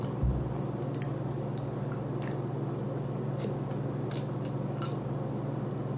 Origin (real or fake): real